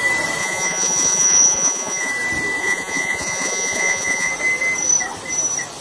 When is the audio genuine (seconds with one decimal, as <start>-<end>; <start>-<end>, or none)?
0.0-0.4; 2.1-2.6; 4.3-5.8